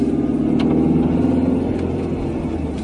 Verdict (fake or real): real